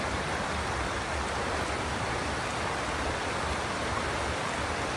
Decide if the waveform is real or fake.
real